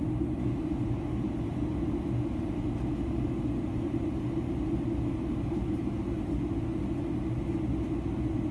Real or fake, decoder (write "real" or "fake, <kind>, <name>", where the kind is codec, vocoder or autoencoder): real